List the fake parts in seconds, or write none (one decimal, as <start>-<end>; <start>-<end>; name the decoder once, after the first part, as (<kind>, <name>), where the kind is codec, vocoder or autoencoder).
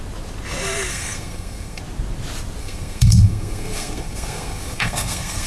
0.9-1.8 (codec, SNAC); 2.6-5.5